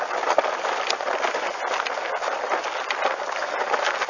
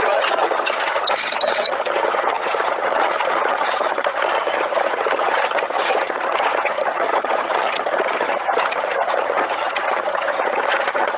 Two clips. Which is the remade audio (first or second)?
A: second